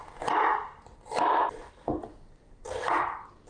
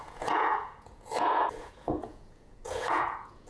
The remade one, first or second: second